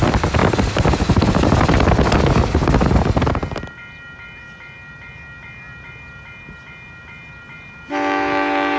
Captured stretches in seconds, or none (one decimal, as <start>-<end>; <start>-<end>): 0.0-8.8